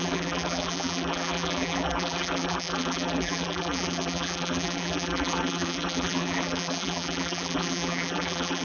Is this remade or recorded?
remade